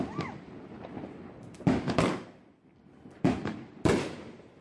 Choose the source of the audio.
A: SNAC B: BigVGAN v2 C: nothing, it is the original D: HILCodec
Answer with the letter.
C